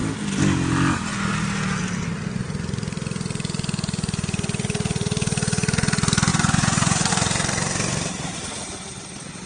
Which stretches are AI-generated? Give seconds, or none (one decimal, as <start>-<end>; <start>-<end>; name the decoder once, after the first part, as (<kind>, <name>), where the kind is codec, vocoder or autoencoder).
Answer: 6.3-7.1 (vocoder, Vocos)